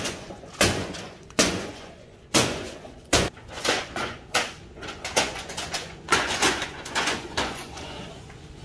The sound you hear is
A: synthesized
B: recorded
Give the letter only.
A